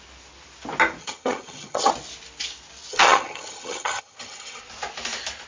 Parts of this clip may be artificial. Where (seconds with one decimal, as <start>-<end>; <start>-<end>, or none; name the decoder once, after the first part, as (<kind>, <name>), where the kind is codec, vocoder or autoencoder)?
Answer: 1.0-1.9 (vocoder, HiFi-GAN); 2.9-4.6